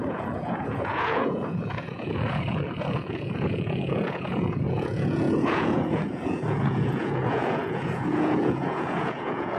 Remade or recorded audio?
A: remade